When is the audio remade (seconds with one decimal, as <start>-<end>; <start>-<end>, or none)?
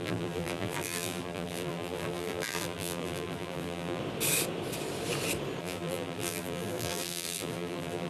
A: 0.0-4.0; 5.6-8.1